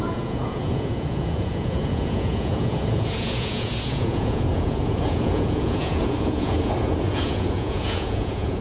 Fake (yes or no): yes